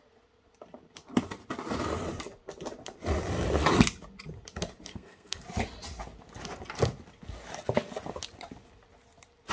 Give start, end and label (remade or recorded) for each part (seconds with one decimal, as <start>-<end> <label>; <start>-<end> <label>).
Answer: 0.0-4.9 recorded; 4.9-5.4 remade; 5.4-9.5 recorded